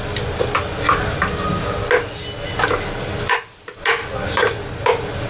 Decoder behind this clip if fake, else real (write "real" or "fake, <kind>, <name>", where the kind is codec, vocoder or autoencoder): real